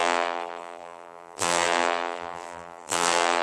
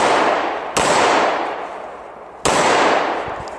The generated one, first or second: first